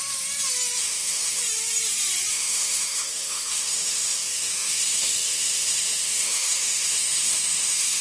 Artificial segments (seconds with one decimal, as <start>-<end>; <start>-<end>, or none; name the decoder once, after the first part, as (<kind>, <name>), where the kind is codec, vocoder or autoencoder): 0.8-1.4 (autoencoder, DAC-VAE); 2.3-8.0